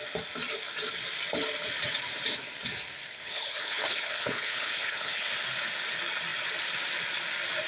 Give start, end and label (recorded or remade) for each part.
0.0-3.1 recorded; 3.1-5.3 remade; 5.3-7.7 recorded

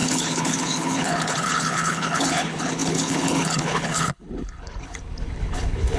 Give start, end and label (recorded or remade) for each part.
0.0-6.0 remade